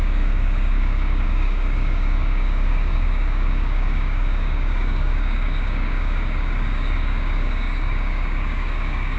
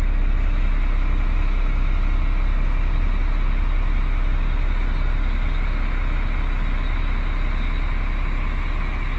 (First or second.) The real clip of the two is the second